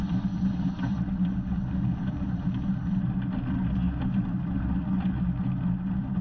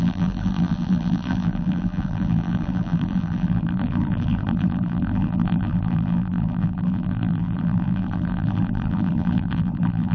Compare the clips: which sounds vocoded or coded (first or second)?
second